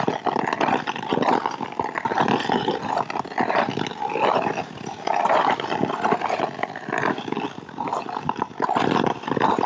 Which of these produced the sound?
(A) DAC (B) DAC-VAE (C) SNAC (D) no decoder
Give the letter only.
D